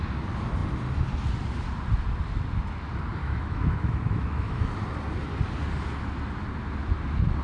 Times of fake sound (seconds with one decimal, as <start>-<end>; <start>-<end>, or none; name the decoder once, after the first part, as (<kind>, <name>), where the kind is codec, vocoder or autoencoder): 3.2-4.7 (autoencoder, DAC-VAE)